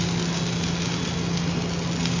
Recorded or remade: recorded